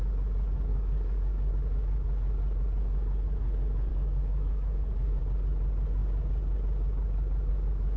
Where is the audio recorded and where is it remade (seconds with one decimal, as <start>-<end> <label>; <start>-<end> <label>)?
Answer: 0.0-0.7 recorded; 0.7-1.5 remade; 1.5-3.9 recorded; 3.9-5.2 remade; 5.2-8.0 recorded